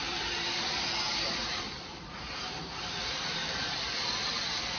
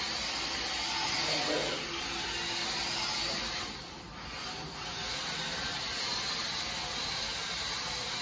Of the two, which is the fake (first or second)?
first